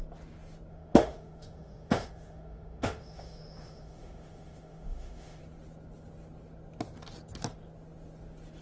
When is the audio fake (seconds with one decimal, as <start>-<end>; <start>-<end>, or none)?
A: 0.7-5.4